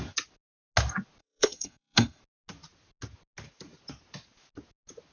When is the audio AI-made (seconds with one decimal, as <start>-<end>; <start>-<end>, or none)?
1.2-2.2